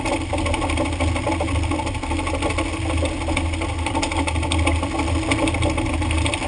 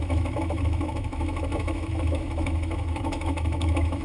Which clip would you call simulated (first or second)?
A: second